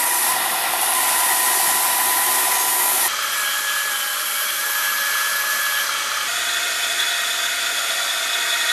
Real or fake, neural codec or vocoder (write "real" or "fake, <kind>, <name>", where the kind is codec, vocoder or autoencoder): fake, vocoder, BigVGAN v2